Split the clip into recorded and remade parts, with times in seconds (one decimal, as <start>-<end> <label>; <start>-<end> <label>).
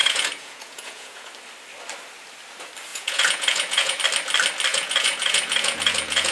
0.0-1.3 remade; 1.3-2.9 recorded; 2.9-4.0 remade; 4.0-4.7 recorded; 4.7-6.3 remade